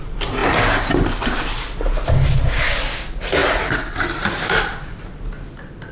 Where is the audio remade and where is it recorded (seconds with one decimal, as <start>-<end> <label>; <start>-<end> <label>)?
0.0-5.9 recorded